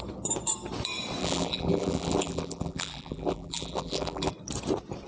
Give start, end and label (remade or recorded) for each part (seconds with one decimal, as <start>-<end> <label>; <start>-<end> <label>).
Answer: 0.0-1.2 recorded; 1.2-4.3 remade; 4.3-5.1 recorded